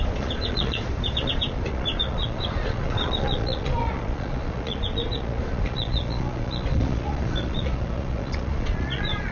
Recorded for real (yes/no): no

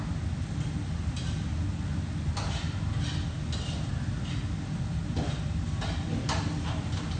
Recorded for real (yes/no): yes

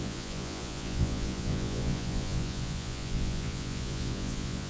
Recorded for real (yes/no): no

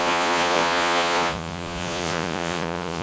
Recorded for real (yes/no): no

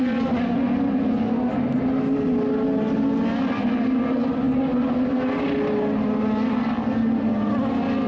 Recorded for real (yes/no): yes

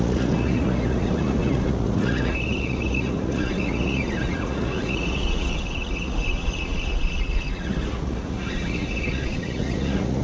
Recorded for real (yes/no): no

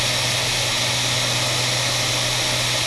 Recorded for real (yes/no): yes